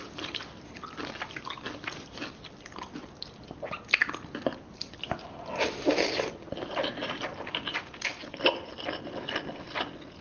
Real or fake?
real